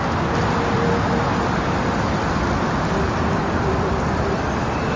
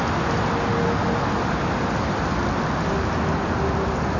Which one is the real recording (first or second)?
second